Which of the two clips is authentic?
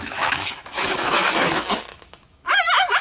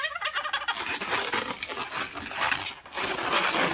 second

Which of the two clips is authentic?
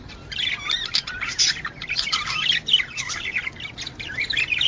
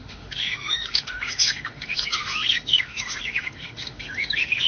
first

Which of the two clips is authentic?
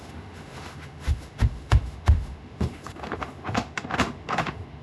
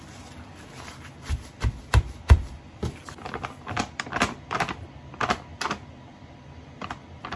second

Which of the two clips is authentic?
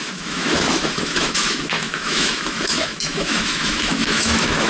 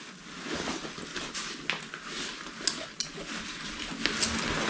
second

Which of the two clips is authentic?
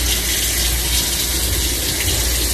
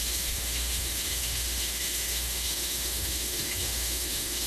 first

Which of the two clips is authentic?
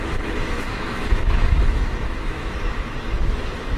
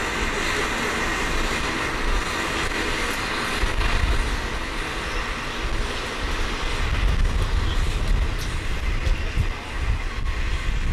second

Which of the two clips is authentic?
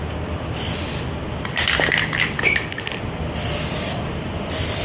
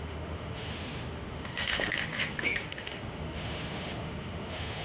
first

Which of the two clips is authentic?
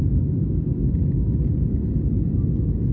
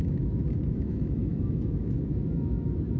first